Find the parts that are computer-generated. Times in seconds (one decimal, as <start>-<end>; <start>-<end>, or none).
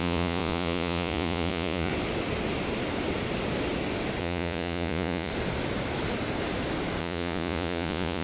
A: 0.0-1.9; 4.2-5.3; 7.0-8.2